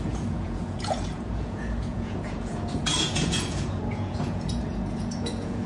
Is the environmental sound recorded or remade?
remade